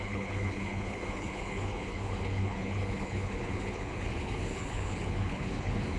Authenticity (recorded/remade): remade